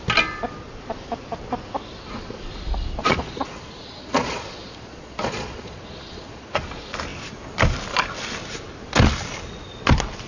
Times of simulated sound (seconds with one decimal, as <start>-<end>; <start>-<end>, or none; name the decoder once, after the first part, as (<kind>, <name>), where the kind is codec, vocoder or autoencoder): 3.0-6.6 (vocoder, Vocos)